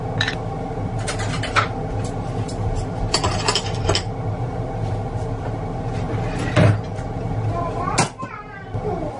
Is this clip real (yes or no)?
yes